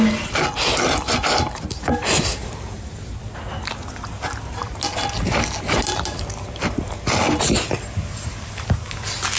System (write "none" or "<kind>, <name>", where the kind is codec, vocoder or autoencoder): none